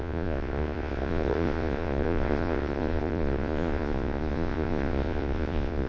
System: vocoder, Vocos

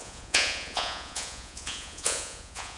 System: vocoder, Vocos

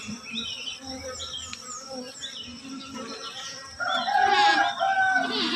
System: none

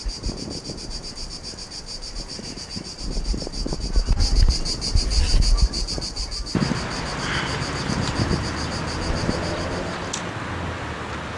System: none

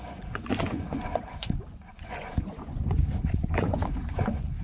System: vocoder, Vocos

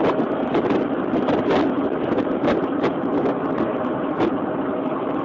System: none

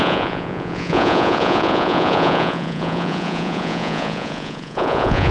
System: vocoder, Vocos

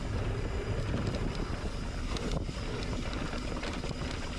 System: none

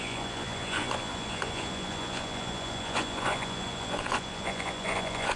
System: vocoder, Vocos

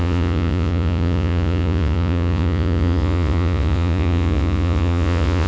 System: vocoder, Vocos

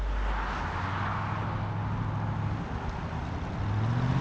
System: none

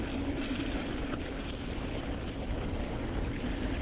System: none